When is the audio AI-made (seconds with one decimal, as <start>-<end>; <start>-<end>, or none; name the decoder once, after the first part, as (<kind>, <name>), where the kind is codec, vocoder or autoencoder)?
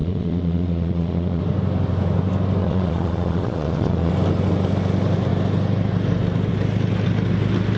0.0-1.4 (vocoder, Vocos); 2.6-4.1